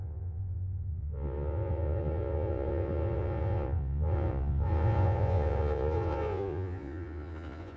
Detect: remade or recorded remade